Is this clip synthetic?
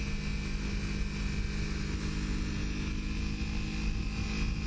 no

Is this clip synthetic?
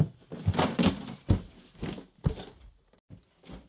no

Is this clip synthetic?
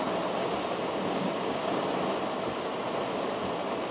no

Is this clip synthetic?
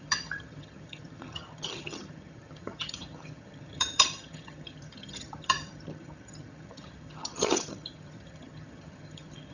yes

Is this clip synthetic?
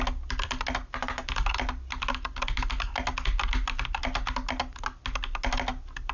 no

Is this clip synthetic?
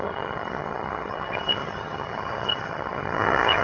yes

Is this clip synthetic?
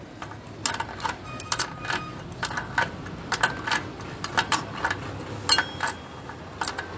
no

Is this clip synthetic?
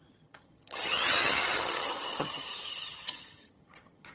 yes